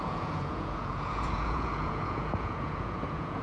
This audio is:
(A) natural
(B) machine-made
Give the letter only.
B